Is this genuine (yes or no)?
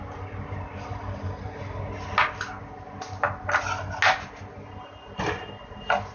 yes